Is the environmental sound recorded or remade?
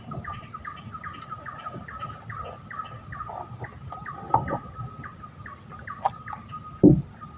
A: recorded